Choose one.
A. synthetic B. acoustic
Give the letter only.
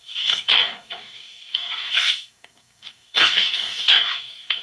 A